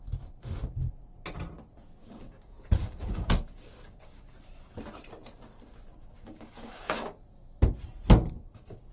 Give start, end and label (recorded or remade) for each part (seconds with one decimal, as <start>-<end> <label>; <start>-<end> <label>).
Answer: 0.0-2.0 recorded; 2.0-4.3 remade; 4.3-6.0 recorded; 6.0-7.2 remade; 7.2-8.2 recorded; 8.2-8.9 remade